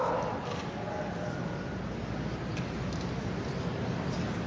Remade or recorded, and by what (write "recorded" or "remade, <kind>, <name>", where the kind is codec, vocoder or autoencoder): recorded